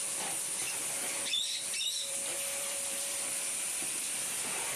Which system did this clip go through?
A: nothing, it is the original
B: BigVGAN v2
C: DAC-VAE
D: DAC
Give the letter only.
B